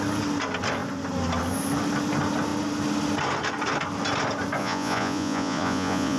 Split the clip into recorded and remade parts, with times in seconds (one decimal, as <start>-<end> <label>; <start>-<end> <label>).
0.0-4.6 recorded; 4.6-6.2 remade